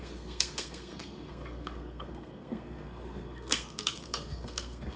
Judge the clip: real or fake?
fake